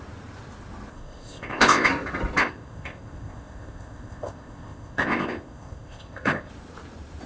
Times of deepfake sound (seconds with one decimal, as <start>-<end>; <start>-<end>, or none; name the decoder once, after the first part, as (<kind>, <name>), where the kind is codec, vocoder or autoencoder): 0.9-1.9 (codec, ZipCodec); 2.4-6.5